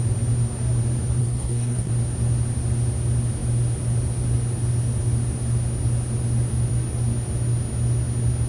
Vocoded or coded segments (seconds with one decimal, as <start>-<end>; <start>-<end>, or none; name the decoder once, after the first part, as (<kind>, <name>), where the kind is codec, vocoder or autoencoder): 1.2-1.9 (codec, SNAC)